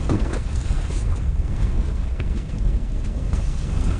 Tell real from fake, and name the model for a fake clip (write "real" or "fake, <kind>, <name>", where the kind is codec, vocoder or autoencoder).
fake, codec, SNAC